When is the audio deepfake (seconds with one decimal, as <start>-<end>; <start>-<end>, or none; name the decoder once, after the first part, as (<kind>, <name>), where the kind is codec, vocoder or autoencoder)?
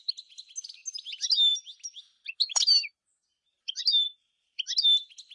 2.4-4.4 (vocoder, BigVGAN v2)